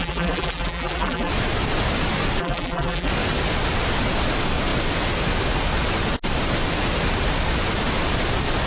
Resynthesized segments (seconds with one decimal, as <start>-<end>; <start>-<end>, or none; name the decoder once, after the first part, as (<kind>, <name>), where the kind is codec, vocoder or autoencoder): 0.0-1.3 (vocoder, BigVGAN v2); 2.4-3.1

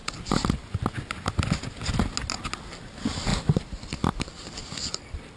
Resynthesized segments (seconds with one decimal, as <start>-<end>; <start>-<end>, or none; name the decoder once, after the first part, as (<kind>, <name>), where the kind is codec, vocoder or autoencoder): 3.3-4.3 (vocoder, BigVGAN v2)

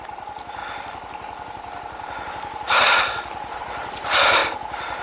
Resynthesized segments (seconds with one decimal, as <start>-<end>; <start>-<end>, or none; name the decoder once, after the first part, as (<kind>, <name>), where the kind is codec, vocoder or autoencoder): 0.0-4.4 (vocoder, BigVGAN v2)

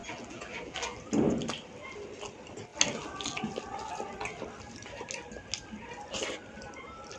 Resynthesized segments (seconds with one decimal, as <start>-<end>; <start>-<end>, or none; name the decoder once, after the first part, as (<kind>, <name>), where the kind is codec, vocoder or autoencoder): 0.0-1.0 (vocoder, BigVGAN v2)